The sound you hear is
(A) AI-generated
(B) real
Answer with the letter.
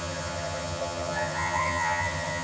A